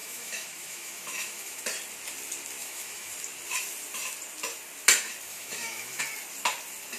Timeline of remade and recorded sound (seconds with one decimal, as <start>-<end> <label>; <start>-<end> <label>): 0.0-1.6 remade; 1.6-2.6 recorded; 2.6-3.1 remade; 3.1-5.3 recorded; 5.3-6.0 remade; 6.0-7.0 recorded